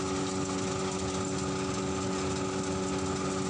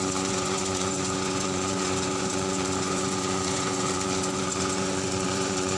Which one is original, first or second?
first